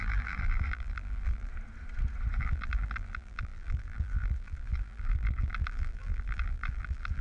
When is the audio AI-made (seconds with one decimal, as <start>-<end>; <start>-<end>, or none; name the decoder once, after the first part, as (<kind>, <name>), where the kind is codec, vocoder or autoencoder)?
0.0-1.5 (vocoder, BigVGAN v2); 2.4-7.2